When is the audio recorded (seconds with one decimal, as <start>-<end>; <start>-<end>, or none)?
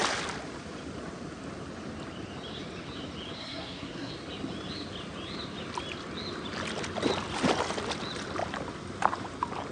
0.0-3.4; 4.1-9.7